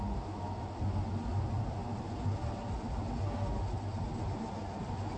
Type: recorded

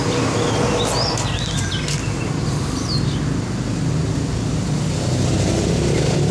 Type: recorded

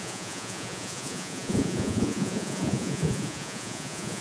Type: remade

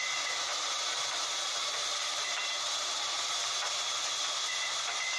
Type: recorded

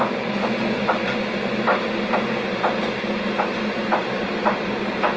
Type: recorded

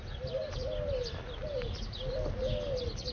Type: recorded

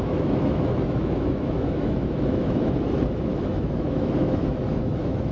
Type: remade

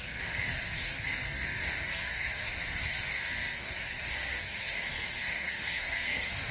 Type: remade